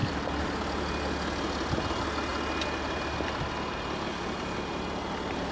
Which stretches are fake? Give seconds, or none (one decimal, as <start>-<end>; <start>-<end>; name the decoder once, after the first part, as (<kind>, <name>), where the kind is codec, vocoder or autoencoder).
1.8-2.3 (vocoder, BigVGAN v2); 5.1-5.5